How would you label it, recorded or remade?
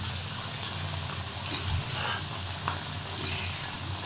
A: recorded